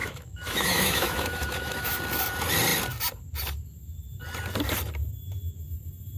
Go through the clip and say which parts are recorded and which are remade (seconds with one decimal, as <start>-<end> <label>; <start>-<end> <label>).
0.0-2.0 remade; 2.0-6.2 recorded